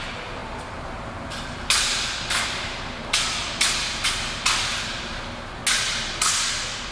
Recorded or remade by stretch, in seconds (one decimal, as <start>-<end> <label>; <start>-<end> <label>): 0.0-0.4 remade; 0.4-1.6 recorded; 1.6-3.4 remade; 3.4-4.8 recorded; 4.8-5.6 remade; 5.6-6.3 recorded; 6.3-6.9 remade